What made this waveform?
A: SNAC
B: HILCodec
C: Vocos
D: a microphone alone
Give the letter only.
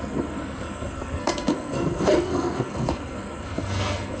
A